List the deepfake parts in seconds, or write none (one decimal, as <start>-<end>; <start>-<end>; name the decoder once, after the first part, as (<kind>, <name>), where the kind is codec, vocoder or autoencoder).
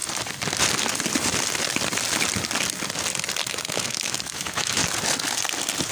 3.5-4.8 (autoencoder, DAC-VAE)